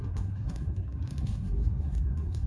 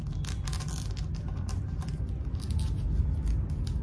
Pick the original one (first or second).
second